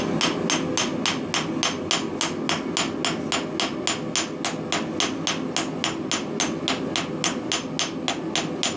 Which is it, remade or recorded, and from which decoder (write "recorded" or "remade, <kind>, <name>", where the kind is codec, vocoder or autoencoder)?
recorded